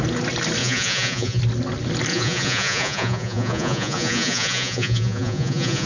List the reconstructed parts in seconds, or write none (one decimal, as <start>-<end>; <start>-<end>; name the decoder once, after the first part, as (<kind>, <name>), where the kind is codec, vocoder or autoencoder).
0.6-1.4 (vocoder, Vocos); 2.1-5.9